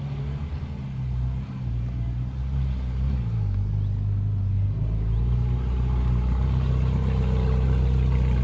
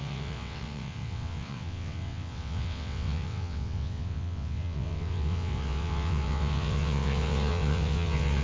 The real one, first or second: first